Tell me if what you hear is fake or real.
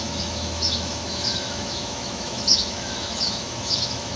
fake